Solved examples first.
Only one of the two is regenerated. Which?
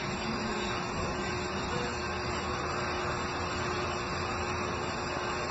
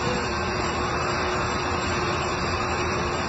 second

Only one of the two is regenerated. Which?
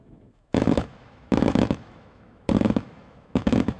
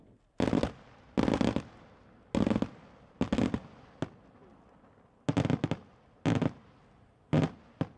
first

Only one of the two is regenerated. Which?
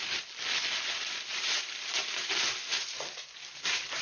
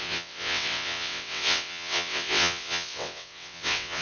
second